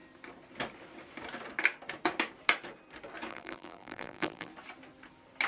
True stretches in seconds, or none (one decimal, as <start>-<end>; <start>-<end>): 0.0-3.3; 4.5-5.5